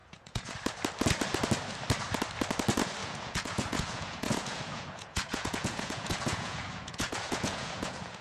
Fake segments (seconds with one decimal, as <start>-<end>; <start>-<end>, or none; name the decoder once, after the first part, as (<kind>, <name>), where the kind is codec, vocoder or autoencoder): 0.0-0.5 (vocoder, Vocos); 3.0-8.2